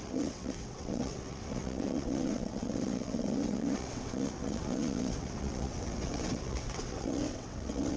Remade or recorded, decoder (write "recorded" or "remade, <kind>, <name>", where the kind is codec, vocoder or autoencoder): remade, vocoder, WaveNeXt